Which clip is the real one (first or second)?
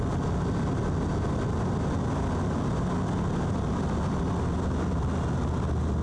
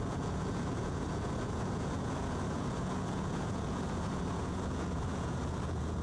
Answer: first